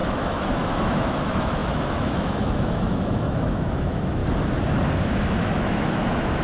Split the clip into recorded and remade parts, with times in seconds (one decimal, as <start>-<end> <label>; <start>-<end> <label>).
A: 0.0-4.2 remade; 4.2-5.5 recorded; 5.5-6.4 remade